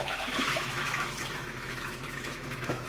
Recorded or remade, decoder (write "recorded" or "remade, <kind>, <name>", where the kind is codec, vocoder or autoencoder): remade, autoencoder, DAC-VAE